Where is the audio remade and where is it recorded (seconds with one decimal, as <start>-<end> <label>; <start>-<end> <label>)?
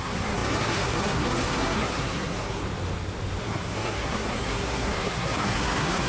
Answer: 0.0-2.6 remade; 2.6-3.4 recorded; 3.4-6.1 remade